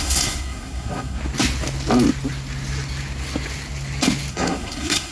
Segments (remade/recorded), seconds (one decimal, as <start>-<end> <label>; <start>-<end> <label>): 0.0-1.2 remade; 1.2-4.3 recorded; 4.3-5.1 remade